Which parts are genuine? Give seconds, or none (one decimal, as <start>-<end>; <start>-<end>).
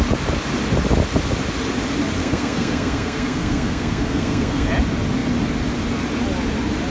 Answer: 0.0-2.2; 4.7-6.9